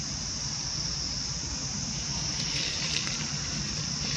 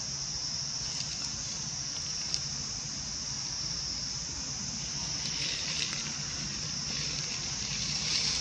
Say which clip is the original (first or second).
second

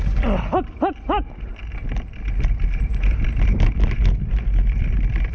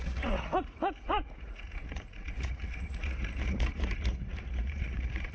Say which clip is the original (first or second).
first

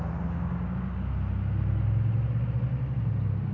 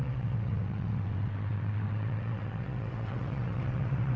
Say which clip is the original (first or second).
first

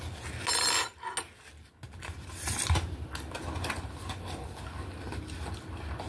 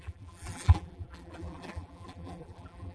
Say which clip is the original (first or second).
first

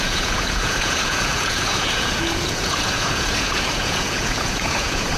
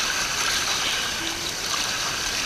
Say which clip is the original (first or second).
second